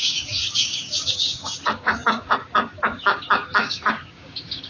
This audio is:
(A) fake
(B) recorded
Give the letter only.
A